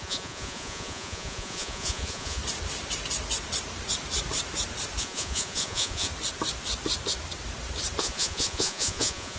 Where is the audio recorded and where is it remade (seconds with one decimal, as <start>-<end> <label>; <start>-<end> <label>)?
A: 0.0-2.4 remade; 2.4-5.0 recorded; 5.0-6.1 remade; 6.1-8.0 recorded; 8.0-9.4 remade